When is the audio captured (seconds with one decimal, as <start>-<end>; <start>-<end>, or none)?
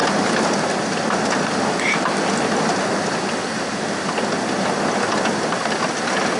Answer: 0.0-6.4